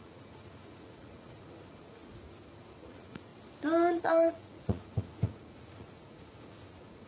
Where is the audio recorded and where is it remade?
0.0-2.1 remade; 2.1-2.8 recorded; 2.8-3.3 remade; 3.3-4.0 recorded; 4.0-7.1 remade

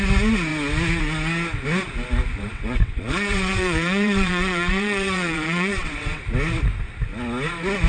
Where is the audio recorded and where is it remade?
0.0-2.4 recorded; 2.4-6.2 remade; 6.2-7.9 recorded

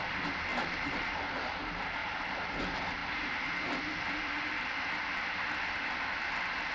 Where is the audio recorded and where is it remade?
0.0-0.5 recorded; 0.5-1.6 remade; 1.6-2.0 recorded; 2.0-2.6 remade; 2.6-6.7 recorded

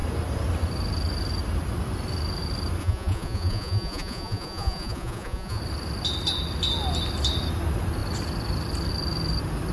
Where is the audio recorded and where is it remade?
0.0-2.8 recorded; 2.8-5.6 remade; 5.6-9.7 recorded

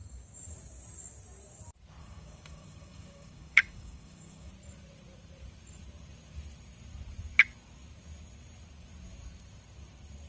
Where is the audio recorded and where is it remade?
0.0-2.0 recorded; 2.0-4.5 remade; 4.5-10.3 recorded

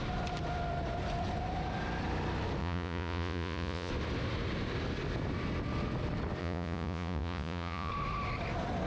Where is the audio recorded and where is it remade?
0.0-2.6 recorded; 2.6-3.9 remade; 3.9-6.4 recorded; 6.4-7.9 remade; 7.9-8.9 recorded

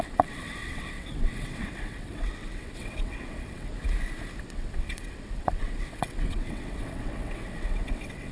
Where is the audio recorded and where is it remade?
0.0-3.7 remade; 3.7-4.4 recorded; 4.4-8.3 remade